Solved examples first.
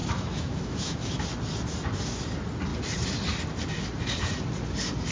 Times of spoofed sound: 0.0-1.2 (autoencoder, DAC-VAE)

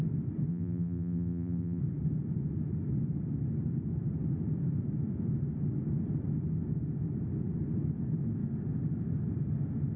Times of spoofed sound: 0.5-1.8 (vocoder, BigVGAN v2)

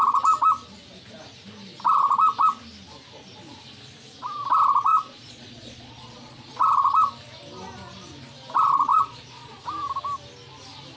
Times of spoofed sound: 4.9-6.6 (vocoder, Vocos); 8.9-9.6

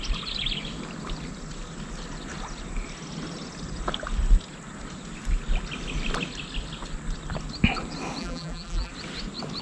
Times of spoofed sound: 8.2-8.9 (vocoder, BigVGAN v2)

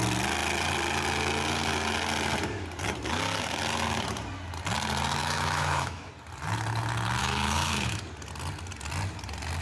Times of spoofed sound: 5.2-6.1 (autoencoder, DAC-VAE); 7.2-8.0

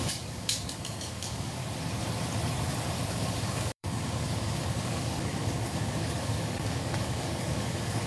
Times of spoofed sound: 0.0-1.6 (codec, DAC); 3.1-8.1

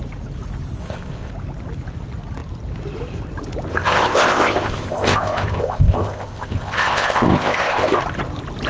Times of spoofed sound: 0.8-1.3 (codec, ZipCodec); 3.7-8.0

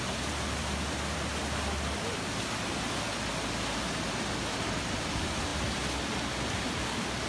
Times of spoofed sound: none